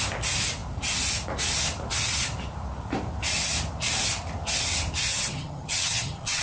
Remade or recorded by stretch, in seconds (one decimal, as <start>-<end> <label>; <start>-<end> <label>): 0.0-5.1 recorded; 5.1-6.4 remade